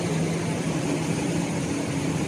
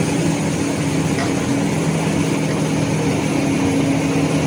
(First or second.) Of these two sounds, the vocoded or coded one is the first